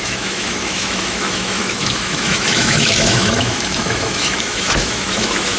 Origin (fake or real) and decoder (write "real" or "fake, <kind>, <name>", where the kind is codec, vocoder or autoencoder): fake, autoencoder, DAC-VAE